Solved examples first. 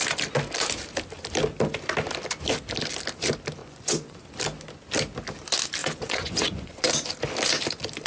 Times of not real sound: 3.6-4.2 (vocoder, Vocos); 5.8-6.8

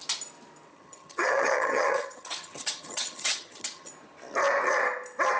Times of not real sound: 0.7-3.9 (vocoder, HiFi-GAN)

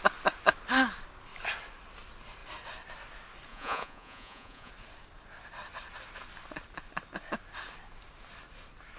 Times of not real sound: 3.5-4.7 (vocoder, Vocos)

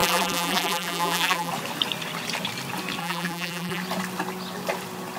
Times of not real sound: 0.0-1.5 (vocoder, BigVGAN v2); 3.0-3.8

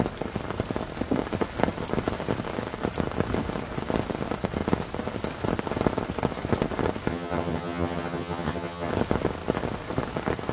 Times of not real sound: 7.1-8.9 (vocoder, HiFi-GAN)